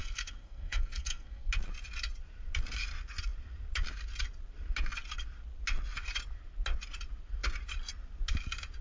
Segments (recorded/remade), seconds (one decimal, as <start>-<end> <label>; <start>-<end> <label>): 0.0-1.5 remade; 1.5-8.8 recorded